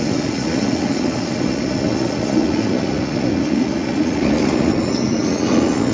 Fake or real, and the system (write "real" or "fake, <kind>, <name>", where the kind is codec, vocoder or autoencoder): fake, vocoder, Vocos